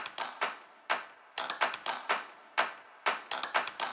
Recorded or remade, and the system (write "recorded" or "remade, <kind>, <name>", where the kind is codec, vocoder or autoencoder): recorded